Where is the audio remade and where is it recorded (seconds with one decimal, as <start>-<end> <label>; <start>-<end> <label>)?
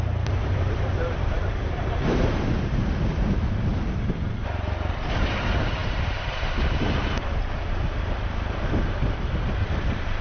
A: 0.0-3.7 remade; 3.7-4.3 recorded; 4.3-10.2 remade